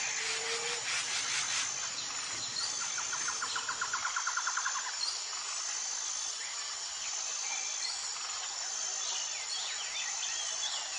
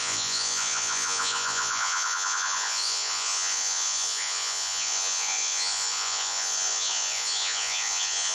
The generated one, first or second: second